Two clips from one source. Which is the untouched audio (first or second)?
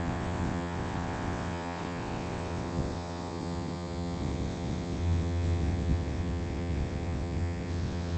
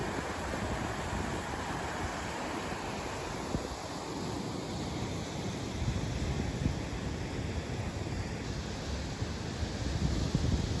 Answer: second